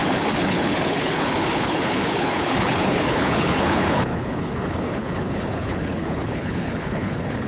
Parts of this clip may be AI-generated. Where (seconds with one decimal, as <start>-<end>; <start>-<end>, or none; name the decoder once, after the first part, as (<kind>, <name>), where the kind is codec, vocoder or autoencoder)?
0.0-7.5 (codec, HILCodec)